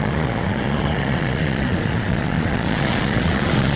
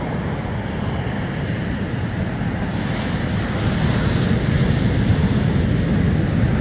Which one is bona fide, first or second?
second